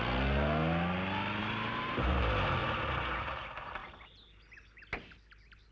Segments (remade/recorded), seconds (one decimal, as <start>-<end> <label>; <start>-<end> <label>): 0.0-1.4 recorded; 1.4-2.2 remade; 2.2-5.7 recorded